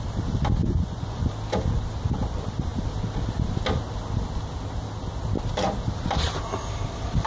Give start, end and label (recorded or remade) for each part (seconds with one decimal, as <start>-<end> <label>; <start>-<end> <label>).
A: 0.0-0.6 recorded; 0.6-1.3 remade; 1.3-7.3 recorded